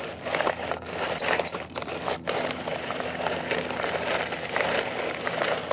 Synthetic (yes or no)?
no